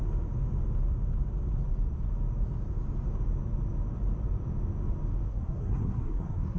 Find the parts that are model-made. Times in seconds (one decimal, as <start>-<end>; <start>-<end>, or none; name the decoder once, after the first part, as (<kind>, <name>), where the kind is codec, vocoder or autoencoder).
5.3-6.6 (codec, SNAC)